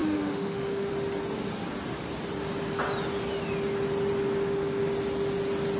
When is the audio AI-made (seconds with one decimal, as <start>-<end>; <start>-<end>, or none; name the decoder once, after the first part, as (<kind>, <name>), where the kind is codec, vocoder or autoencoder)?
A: 0.0-0.9 (autoencoder, DAC-VAE)

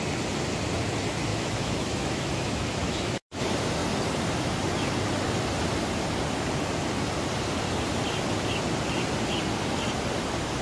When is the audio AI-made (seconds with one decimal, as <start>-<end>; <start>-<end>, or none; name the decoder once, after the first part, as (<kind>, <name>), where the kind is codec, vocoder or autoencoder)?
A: 1.3-3.4 (autoencoder, DAC-VAE)

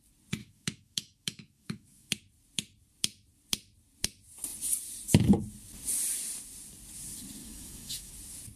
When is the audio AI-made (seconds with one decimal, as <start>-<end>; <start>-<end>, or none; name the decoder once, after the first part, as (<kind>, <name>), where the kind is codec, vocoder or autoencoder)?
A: 0.4-2.1 (autoencoder, DAC-VAE); 7.4-8.1

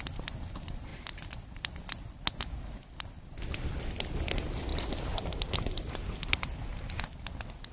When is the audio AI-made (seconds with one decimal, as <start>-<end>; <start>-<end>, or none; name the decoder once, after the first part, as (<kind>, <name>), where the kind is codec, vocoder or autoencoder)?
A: none

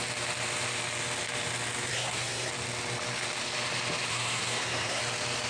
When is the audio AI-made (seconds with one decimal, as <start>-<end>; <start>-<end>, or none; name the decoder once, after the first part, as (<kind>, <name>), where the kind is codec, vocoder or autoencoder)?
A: 1.9-2.5 (codec, SNAC); 4.1-5.0

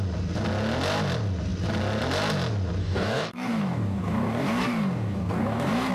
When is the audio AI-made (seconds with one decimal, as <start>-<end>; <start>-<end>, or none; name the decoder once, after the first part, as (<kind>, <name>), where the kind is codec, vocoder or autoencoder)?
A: 2.8-5.9 (codec, DAC)

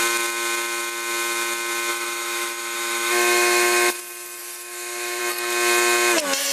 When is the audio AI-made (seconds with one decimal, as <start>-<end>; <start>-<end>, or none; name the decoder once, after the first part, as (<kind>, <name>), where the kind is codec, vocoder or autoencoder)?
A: 1.9-4.0 (autoencoder, DAC-VAE); 4.4-5.2

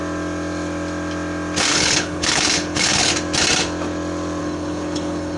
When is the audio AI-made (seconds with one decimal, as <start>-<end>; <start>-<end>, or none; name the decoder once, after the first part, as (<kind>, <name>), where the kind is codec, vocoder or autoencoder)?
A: 1.7-3.1 (codec, HILCodec); 4.4-5.4